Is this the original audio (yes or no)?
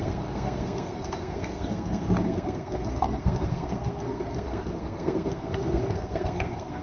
no